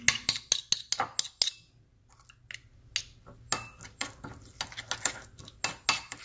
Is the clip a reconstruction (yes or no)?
no